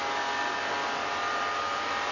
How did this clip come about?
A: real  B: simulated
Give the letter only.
A